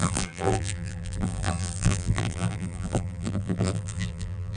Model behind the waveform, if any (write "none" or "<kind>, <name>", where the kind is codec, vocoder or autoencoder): vocoder, BigVGAN v2